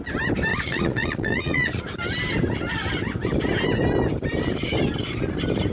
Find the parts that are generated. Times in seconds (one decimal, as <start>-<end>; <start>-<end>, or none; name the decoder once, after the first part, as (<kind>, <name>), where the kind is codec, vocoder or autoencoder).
0.5-1.8 (vocoder, Vocos)